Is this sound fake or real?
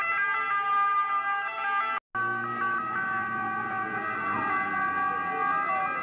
real